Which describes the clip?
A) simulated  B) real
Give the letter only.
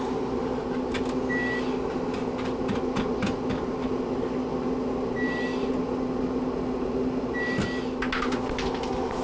B